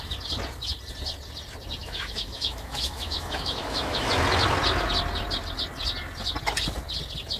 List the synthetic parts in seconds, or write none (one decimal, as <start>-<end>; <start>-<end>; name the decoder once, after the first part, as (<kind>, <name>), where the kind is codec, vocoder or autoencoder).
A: 1.8-4.1 (autoencoder, DAC-VAE)